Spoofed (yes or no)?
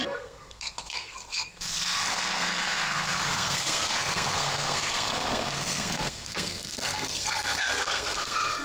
yes